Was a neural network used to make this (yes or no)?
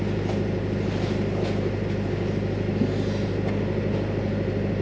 no